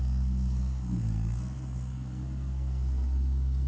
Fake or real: fake